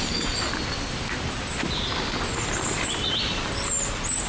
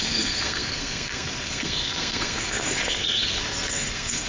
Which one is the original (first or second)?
first